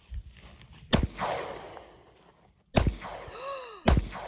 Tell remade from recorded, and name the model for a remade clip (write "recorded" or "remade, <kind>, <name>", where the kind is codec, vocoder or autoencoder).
recorded